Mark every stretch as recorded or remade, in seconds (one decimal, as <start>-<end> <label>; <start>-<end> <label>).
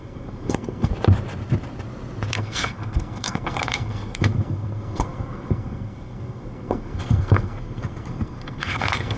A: 0.0-0.9 remade; 0.9-2.3 recorded; 2.3-9.2 remade